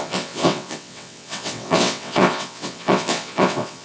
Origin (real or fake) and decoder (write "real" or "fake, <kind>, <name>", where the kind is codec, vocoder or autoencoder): fake, vocoder, WaveNeXt